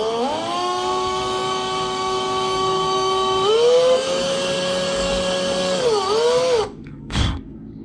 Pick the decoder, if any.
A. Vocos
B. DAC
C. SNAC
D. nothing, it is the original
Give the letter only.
B